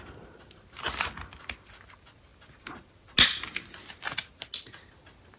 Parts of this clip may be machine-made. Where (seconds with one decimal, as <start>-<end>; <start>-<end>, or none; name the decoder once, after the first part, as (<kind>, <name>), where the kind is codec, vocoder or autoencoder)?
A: none